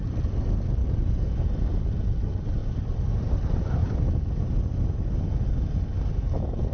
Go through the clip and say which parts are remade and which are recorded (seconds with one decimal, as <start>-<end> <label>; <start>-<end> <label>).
0.0-2.6 recorded; 2.6-3.3 remade; 3.3-3.8 recorded; 3.8-4.4 remade; 4.4-6.7 recorded